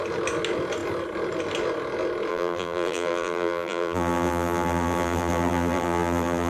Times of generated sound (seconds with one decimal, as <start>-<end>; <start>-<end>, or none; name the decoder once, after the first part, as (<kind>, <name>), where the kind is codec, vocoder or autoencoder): 2.3-6.5 (vocoder, BigVGAN v2)